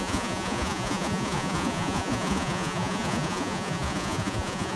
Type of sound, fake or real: fake